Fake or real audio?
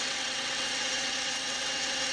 fake